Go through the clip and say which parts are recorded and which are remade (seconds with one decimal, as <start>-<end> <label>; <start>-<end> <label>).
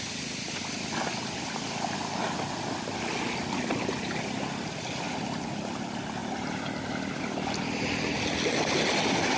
0.0-9.4 recorded